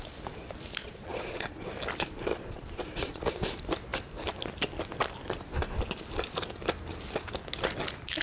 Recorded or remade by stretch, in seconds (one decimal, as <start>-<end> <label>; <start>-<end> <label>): 0.0-0.8 recorded; 0.8-1.7 remade; 1.7-2.3 recorded; 2.3-3.3 remade; 3.3-8.2 recorded